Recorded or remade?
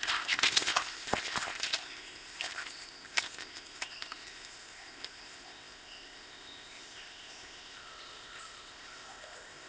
remade